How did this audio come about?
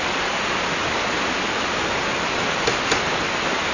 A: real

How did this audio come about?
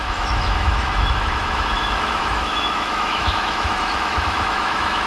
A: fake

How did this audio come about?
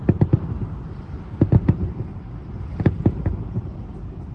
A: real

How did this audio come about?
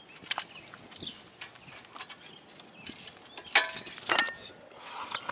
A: real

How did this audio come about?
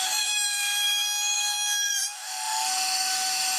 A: fake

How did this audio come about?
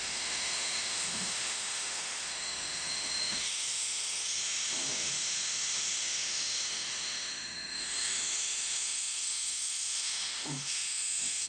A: fake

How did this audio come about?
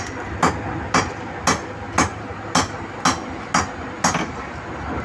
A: real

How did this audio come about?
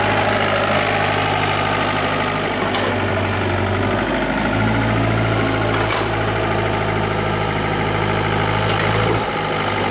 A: real